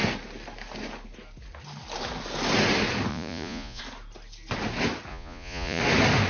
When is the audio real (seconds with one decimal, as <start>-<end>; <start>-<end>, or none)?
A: 0.0-3.1; 3.8-5.1; 5.8-6.3